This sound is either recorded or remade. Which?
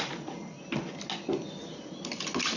recorded